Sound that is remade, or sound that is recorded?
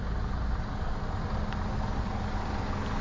recorded